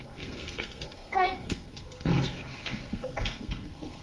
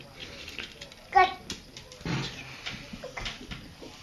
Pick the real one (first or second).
second